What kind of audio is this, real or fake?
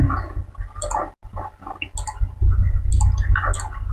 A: real